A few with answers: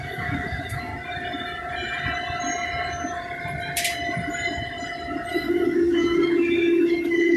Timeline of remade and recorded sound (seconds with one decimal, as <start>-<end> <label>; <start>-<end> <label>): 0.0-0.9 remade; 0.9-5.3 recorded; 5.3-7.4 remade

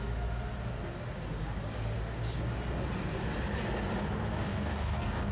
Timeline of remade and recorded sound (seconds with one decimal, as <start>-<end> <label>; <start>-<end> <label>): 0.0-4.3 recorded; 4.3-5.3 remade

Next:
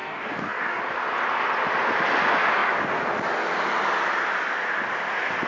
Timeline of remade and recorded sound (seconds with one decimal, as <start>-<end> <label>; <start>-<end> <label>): 0.0-0.8 remade; 0.8-5.5 recorded